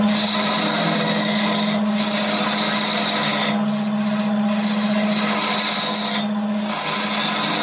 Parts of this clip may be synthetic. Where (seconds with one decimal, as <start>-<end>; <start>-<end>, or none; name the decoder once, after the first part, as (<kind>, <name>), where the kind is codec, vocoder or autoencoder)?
none